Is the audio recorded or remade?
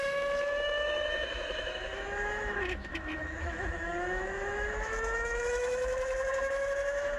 remade